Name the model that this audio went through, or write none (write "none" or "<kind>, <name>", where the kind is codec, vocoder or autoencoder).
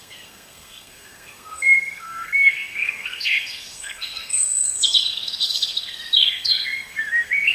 codec, SNAC